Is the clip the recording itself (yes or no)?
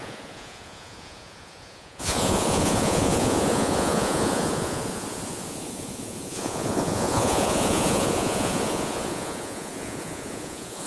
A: no